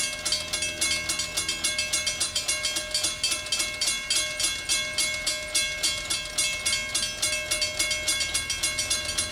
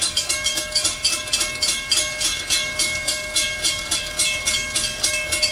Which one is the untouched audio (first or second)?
first